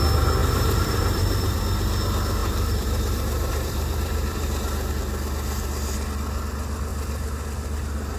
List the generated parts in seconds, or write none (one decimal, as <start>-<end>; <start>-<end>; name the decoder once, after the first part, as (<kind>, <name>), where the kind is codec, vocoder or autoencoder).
0.4-1.6 (vocoder, BigVGAN v2); 2.4-4.9